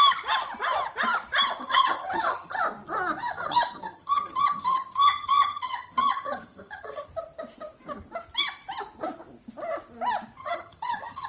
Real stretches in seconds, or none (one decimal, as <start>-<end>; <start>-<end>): 0.0-1.6; 2.6-3.2; 7.1-10.4